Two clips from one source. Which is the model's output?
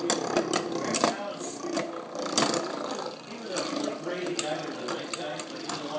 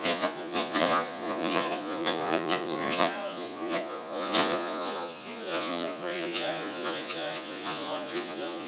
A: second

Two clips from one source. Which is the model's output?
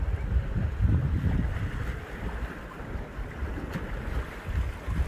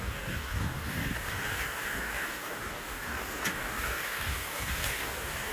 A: second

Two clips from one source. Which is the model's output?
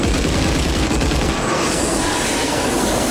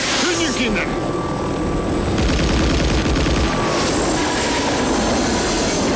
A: first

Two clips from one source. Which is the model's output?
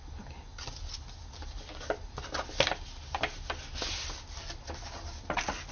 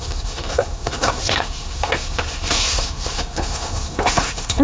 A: second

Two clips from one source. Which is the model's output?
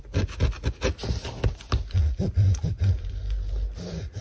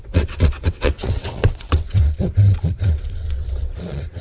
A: second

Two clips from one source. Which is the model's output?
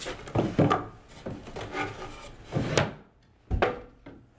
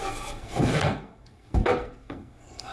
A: second